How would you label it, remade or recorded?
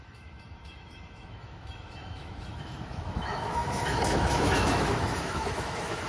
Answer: remade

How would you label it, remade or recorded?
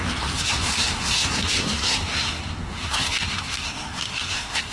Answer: remade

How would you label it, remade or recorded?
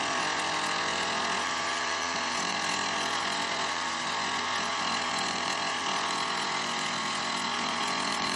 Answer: remade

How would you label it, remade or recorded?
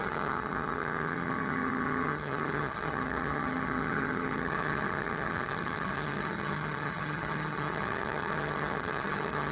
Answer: remade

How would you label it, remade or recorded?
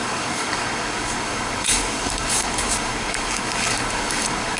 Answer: remade